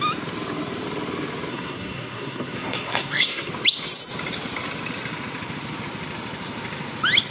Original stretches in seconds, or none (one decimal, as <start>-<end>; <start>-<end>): 0.0-1.5; 3.5-7.3